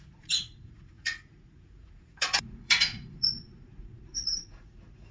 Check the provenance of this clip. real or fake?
fake